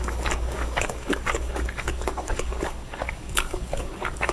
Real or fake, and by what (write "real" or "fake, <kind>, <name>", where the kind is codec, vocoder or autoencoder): fake, codec, DAC